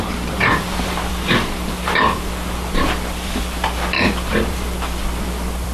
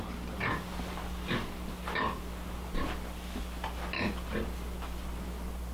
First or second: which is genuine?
second